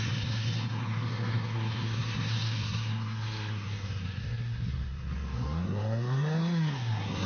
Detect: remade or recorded remade